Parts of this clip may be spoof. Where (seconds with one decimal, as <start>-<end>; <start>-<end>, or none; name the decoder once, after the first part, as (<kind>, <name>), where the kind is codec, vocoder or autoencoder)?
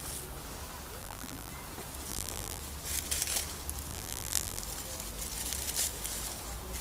1.0-1.5 (vocoder, BigVGAN v2); 2.1-2.6; 3.9-4.6